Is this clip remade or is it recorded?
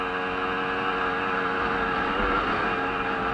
recorded